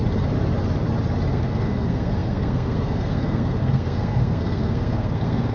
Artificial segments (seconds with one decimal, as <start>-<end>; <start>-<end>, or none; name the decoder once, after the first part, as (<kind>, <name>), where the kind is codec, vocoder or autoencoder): 1.3-5.5 (codec, SNAC)